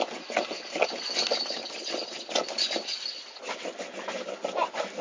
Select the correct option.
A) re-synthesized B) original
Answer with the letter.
B